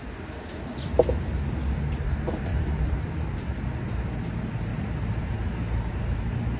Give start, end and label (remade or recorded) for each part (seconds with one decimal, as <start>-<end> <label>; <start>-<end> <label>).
0.0-2.5 recorded; 2.5-3.6 remade; 3.6-4.7 recorded; 4.7-6.6 remade